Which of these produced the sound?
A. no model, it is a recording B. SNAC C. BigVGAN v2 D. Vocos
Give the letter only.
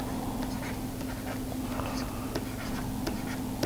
A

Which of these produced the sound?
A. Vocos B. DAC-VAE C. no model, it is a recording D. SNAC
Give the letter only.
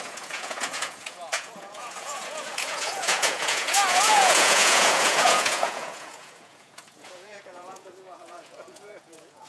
A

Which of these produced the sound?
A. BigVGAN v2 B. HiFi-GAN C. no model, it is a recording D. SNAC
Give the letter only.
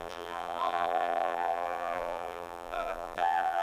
A